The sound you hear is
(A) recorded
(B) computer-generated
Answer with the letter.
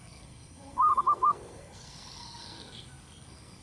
B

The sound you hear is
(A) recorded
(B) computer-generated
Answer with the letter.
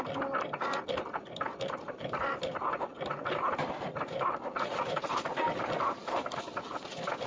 A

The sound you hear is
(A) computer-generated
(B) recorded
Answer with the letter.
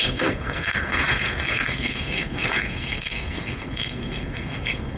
A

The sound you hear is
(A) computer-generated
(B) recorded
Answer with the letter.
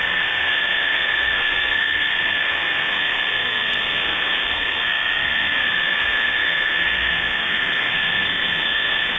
A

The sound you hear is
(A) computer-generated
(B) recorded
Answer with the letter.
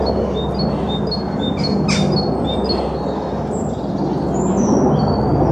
B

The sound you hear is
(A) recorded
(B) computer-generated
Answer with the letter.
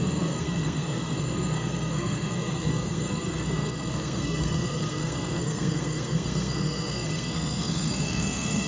B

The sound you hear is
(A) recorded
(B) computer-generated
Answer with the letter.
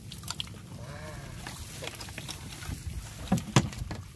A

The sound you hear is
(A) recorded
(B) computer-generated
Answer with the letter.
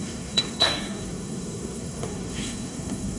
B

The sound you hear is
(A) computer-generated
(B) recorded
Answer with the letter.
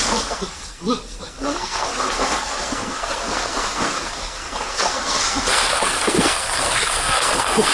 A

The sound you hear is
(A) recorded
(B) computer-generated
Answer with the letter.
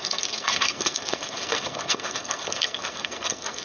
B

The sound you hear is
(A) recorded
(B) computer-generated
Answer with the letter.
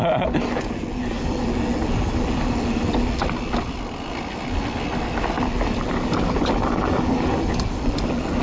A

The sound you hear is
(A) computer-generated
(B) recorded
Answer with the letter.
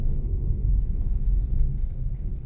A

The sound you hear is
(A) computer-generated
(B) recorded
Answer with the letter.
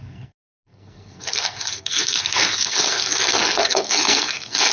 A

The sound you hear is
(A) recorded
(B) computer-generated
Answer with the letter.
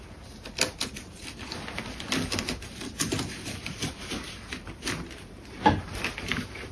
A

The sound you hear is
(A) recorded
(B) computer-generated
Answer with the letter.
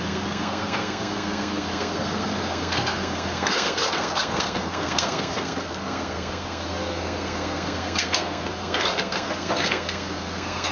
B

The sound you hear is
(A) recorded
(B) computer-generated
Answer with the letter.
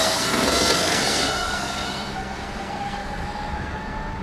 B